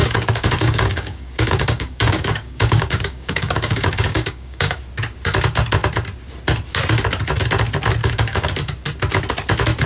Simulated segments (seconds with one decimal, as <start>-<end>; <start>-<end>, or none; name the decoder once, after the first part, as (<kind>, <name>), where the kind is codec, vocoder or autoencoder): 0.0-4.8 (codec, DAC); 8.0-8.5